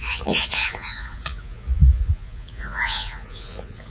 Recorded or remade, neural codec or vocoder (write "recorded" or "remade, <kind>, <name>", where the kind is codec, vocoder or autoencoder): remade, vocoder, Vocos